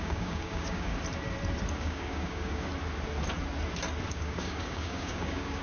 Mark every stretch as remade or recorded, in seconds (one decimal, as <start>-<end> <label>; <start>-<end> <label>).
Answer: 0.0-0.9 remade; 0.9-1.8 recorded; 1.8-2.7 remade; 2.7-4.1 recorded; 4.1-5.6 remade